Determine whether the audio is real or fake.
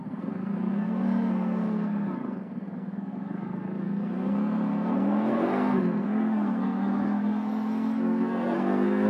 fake